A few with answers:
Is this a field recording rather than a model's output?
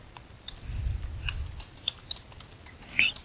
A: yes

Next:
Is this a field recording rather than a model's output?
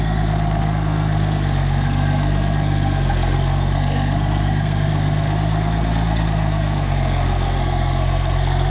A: no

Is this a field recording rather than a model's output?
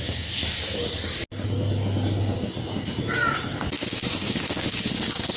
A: yes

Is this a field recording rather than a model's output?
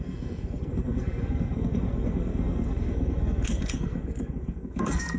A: no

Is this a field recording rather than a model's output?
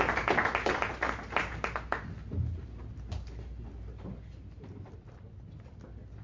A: yes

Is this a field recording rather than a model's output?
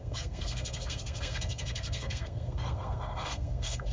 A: no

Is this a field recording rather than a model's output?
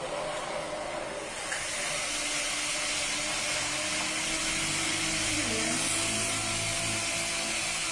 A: yes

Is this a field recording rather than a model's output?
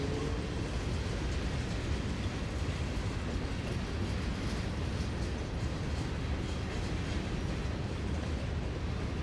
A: yes